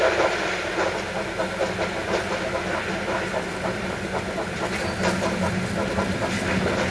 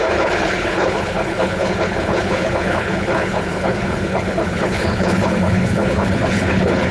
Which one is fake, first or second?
second